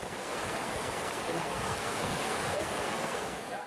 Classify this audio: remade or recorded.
remade